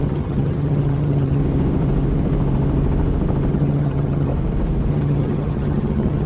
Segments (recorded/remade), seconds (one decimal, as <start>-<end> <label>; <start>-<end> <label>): 0.0-1.4 remade; 1.4-3.5 recorded; 3.5-4.3 remade; 4.3-4.9 recorded; 4.9-6.3 remade